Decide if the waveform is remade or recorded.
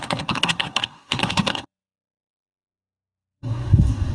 remade